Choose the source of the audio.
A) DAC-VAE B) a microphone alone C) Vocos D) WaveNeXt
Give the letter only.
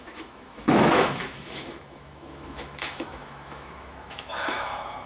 A